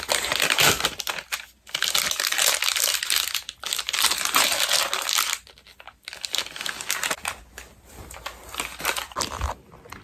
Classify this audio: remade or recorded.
recorded